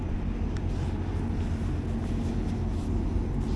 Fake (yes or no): no